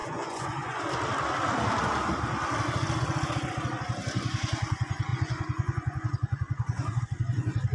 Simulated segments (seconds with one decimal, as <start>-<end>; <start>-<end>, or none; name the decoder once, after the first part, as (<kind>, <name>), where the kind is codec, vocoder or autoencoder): 0.0-0.8 (vocoder, Vocos); 5.1-7.0